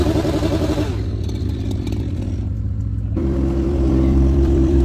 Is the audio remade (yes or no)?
yes